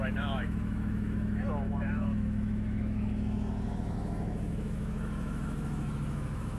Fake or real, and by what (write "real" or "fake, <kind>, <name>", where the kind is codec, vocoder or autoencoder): fake, autoencoder, DAC-VAE